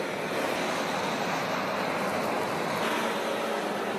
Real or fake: real